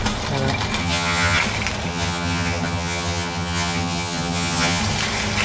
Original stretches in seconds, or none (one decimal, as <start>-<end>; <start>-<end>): 0.0-0.8; 1.4-1.9; 4.8-5.4